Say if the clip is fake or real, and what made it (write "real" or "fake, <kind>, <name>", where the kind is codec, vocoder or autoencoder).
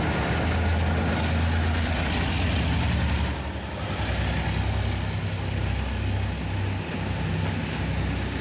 real